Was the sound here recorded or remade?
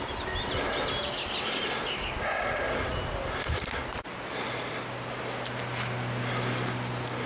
recorded